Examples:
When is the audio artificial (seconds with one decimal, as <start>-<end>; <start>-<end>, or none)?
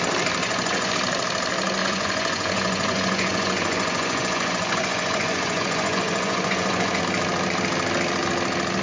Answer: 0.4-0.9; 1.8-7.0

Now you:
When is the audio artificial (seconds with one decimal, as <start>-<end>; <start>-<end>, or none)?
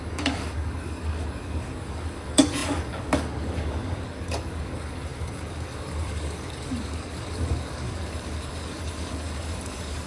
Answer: 0.0-10.1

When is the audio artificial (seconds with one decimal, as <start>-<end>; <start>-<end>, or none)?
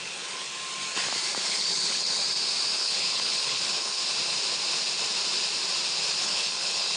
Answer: 0.0-0.5; 1.5-2.2; 2.8-4.0; 6.2-7.0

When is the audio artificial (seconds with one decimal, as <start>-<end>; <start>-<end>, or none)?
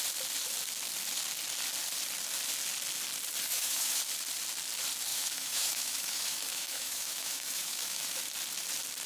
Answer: 3.5-4.0; 5.1-8.2